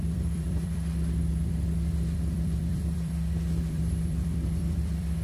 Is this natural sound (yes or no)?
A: no